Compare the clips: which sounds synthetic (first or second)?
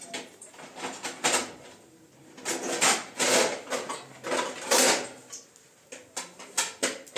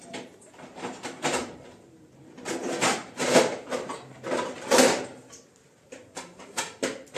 second